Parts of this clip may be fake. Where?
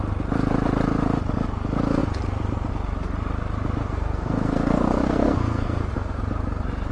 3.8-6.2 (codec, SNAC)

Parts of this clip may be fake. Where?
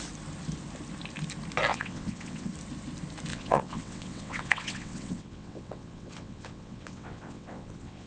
1.7-2.5 (vocoder, WaveNeXt); 3.3-8.1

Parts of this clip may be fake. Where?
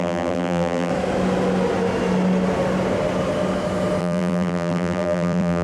0.0-0.9 (vocoder, BigVGAN v2); 4.0-5.6